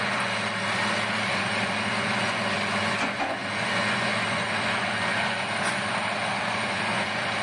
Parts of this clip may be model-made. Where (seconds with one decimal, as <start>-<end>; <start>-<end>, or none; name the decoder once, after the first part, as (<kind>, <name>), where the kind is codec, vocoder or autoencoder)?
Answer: 0.0-7.4 (vocoder, Vocos)